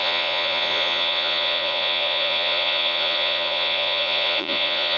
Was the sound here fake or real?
fake